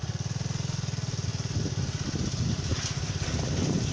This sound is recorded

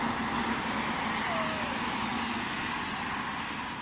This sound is recorded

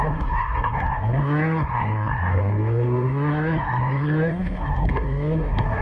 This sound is remade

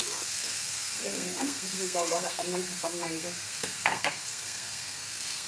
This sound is remade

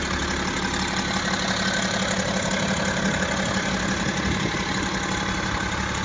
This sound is recorded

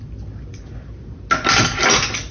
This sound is recorded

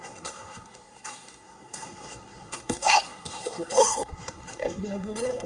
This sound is remade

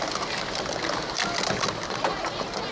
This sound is recorded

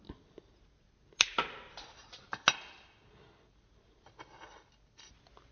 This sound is recorded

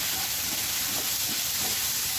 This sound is recorded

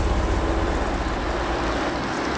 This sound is recorded